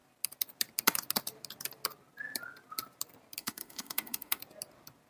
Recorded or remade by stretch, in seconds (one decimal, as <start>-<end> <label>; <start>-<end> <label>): 0.0-3.4 recorded; 3.4-4.4 remade; 4.4-5.1 recorded